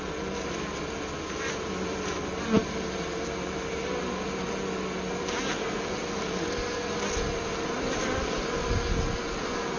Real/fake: real